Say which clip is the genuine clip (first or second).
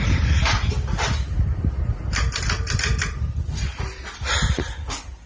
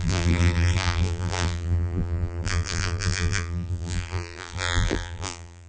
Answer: first